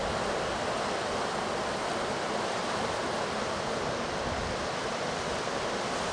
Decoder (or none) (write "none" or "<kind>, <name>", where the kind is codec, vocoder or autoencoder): none